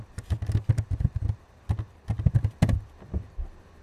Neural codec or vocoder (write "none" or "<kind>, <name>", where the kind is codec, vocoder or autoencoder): none